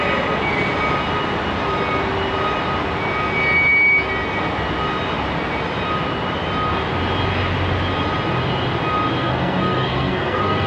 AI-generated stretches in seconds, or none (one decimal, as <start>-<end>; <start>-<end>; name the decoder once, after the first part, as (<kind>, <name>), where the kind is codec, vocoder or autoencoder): 9.2-10.7 (codec, SNAC)